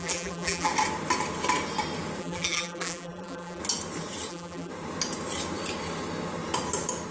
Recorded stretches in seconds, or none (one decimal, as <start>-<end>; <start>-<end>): 0.7-2.2; 3.6-4.3; 4.7-7.1